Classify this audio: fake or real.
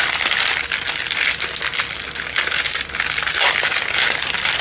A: real